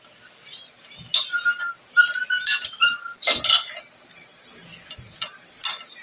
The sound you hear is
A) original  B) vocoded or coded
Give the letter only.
A